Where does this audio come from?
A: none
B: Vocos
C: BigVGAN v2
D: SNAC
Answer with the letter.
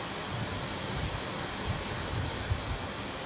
A